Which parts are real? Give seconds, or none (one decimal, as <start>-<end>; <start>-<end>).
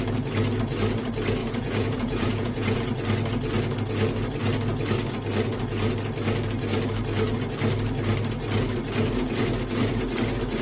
0.0-1.4; 2.8-10.6